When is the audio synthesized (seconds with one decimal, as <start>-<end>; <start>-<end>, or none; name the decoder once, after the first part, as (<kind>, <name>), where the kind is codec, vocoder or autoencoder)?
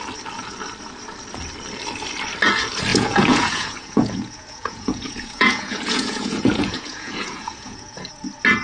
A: 2.9-8.1 (vocoder, Vocos)